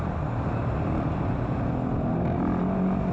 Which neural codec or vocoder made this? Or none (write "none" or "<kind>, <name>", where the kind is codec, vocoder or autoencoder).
none